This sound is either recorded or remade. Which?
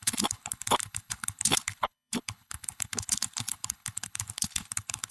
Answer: remade